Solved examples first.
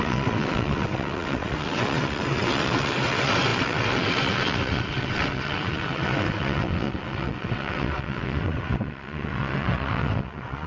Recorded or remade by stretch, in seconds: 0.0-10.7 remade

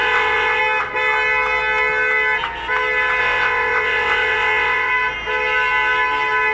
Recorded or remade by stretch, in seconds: 0.0-0.6 remade; 0.6-3.2 recorded; 3.2-4.9 remade; 4.9-6.5 recorded

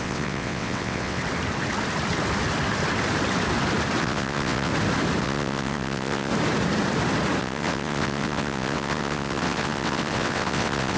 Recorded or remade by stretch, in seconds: 0.0-1.2 remade; 1.2-4.0 recorded; 4.0-4.7 remade; 4.7-5.2 recorded; 5.2-6.3 remade; 6.3-7.4 recorded; 7.4-11.0 remade

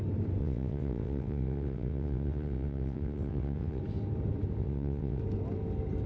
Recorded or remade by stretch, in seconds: 0.0-0.4 recorded; 0.4-3.8 remade; 3.8-4.6 recorded; 4.6-5.2 remade; 5.2-6.1 recorded

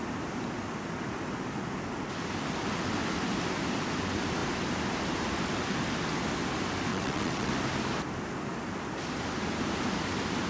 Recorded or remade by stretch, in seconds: 0.0-6.9 recorded; 6.9-7.5 remade; 7.5-10.5 recorded